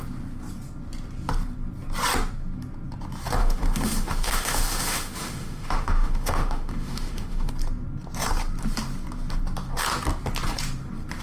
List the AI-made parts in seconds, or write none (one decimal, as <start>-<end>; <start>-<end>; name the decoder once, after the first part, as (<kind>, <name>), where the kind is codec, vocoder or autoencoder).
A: 3.4-7.5 (autoencoder, DAC-VAE)